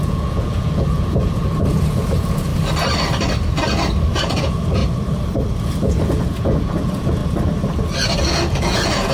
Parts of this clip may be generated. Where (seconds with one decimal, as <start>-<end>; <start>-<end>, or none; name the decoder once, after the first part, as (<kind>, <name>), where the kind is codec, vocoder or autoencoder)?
0.0-2.5 (vocoder, Vocos); 4.1-4.8; 5.6-7.2; 8.2-9.1